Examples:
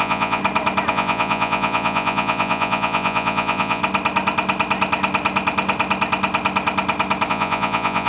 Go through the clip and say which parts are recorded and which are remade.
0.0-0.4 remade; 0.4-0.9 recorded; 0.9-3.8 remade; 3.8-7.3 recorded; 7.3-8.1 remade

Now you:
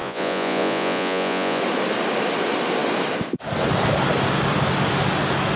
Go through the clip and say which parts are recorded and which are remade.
0.0-1.6 remade; 1.6-5.6 recorded

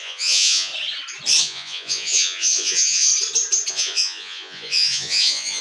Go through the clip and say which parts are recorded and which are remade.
0.0-0.7 remade; 0.7-1.4 recorded; 1.4-3.1 remade; 3.1-3.7 recorded; 3.7-5.6 remade

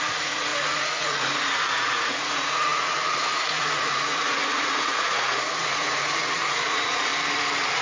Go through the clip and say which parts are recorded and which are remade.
0.0-7.1 remade; 7.1-7.8 recorded

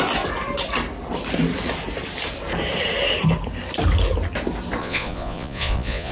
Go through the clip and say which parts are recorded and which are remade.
0.0-4.8 recorded; 4.8-6.1 remade